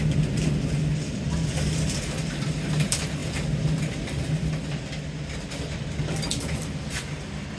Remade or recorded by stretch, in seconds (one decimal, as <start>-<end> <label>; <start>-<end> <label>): 0.0-7.6 recorded